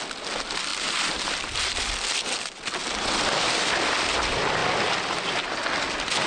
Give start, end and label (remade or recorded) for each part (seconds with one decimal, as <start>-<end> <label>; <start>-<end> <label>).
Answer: 0.0-0.7 recorded; 0.7-1.8 remade; 1.8-6.3 recorded